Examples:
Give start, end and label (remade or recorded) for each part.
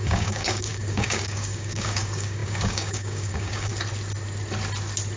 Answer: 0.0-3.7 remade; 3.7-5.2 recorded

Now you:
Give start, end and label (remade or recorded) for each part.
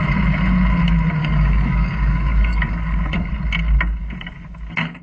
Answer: 0.0-1.2 recorded; 1.2-3.3 remade; 3.3-4.0 recorded; 4.0-5.0 remade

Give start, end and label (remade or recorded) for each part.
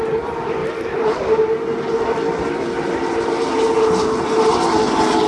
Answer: 0.0-5.3 recorded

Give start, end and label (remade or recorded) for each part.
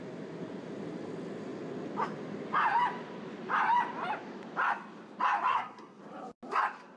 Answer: 0.0-5.5 recorded; 5.5-6.0 remade; 6.0-7.0 recorded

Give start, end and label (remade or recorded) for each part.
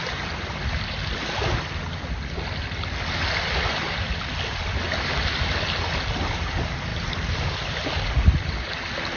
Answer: 0.0-9.2 recorded